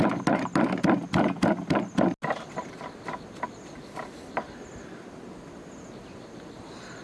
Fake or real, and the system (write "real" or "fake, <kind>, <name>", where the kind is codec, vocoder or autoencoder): real